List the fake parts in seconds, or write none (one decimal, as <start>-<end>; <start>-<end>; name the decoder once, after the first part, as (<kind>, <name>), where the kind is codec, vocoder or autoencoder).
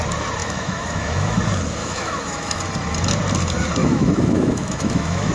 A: 0.4-1.4 (autoencoder, DAC-VAE); 1.8-2.6; 3.8-5.3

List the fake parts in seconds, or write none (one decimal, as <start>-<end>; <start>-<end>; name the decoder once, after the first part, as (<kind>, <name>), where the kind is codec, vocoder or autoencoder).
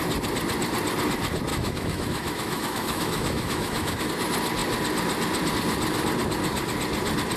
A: 1.5-4.1 (autoencoder, DAC-VAE)